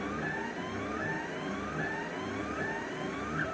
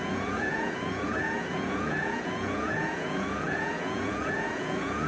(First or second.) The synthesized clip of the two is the second